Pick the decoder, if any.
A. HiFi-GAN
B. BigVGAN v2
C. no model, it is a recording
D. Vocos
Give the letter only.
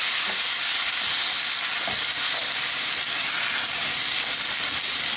C